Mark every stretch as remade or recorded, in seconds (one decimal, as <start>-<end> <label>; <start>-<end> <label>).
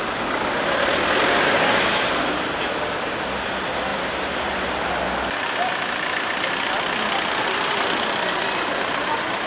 0.0-9.5 recorded